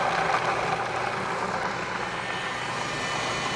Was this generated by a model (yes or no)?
no